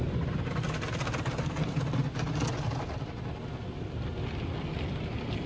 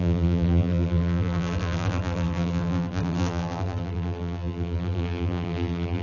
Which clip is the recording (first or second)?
first